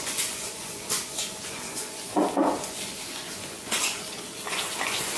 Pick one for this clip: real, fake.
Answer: fake